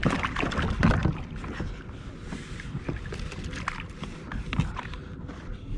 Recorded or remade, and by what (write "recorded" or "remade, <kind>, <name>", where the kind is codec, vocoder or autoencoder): recorded